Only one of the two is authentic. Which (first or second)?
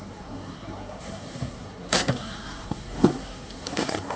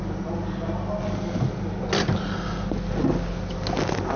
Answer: second